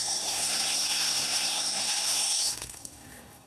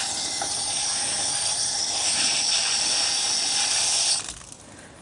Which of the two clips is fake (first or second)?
first